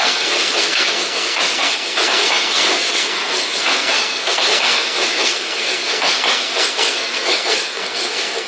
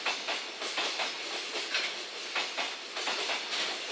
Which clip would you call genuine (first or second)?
second